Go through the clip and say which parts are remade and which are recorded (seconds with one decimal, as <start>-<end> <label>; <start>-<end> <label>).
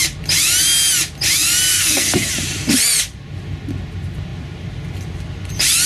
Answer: 0.0-1.7 recorded; 1.7-2.3 remade; 2.3-5.9 recorded